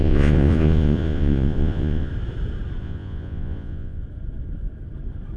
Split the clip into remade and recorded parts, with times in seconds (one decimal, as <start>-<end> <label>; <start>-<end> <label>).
0.0-2.1 remade; 2.1-2.8 recorded; 2.8-4.0 remade; 4.0-5.4 recorded